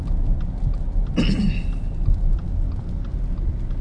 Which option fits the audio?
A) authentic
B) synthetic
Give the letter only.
A